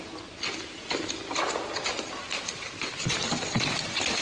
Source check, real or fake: real